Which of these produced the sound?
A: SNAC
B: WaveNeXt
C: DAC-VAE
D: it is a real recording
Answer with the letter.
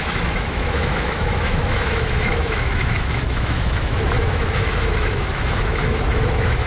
C